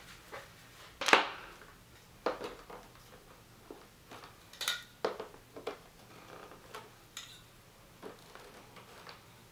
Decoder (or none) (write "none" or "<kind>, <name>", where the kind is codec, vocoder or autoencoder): none